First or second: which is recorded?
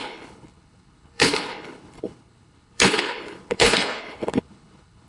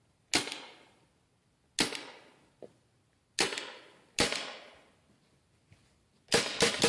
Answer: second